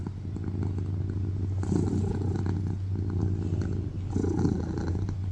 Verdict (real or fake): real